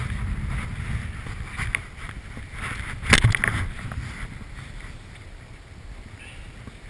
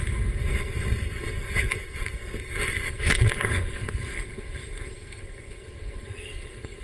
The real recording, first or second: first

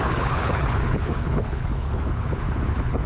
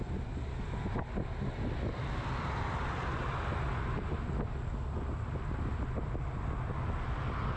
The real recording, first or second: second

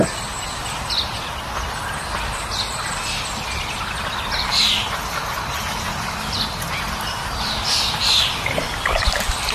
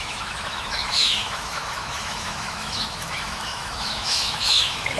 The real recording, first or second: first